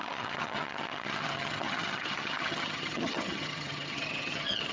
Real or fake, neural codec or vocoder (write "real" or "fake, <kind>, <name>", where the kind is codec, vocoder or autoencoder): fake, vocoder, HiFi-GAN